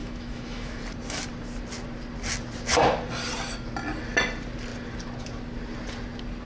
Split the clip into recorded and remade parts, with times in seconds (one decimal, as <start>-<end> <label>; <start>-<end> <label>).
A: 0.0-0.8 remade; 0.8-6.5 recorded